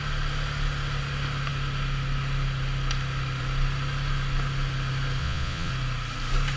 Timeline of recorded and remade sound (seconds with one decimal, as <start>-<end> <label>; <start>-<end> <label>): 0.0-5.2 recorded; 5.2-5.7 remade; 5.7-6.6 recorded